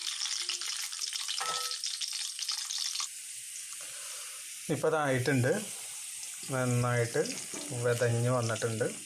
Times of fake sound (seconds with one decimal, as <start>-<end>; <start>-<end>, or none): 0.0-1.2; 8.1-8.6